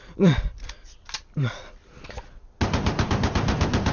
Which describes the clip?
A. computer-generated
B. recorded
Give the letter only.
B